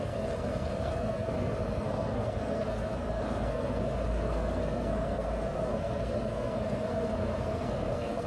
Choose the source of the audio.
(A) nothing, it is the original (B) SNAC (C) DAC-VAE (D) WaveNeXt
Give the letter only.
B